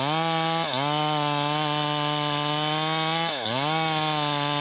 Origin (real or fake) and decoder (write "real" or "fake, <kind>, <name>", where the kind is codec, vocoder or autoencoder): real